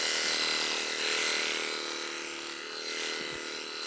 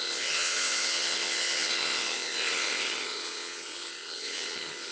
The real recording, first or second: first